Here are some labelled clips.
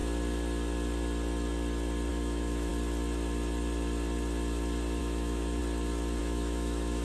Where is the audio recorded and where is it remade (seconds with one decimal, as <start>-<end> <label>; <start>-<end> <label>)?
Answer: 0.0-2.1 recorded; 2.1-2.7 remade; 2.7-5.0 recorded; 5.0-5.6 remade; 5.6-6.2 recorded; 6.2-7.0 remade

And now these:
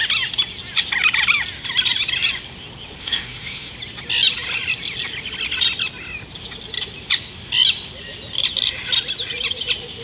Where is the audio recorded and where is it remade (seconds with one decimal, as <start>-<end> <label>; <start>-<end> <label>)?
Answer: 0.0-3.0 recorded; 3.0-3.7 remade; 3.7-10.0 recorded

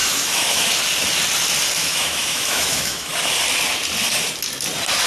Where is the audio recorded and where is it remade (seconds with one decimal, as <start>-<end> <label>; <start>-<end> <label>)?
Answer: 0.0-0.7 remade; 0.7-1.8 recorded; 1.8-3.1 remade; 3.1-5.1 recorded

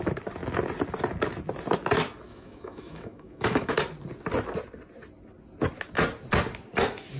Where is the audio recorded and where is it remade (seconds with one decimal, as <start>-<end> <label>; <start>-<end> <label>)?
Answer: 0.0-2.3 recorded; 2.3-3.7 remade; 3.7-7.2 recorded

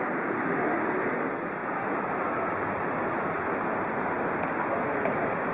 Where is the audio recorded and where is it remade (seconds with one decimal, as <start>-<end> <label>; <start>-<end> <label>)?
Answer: 0.0-5.5 recorded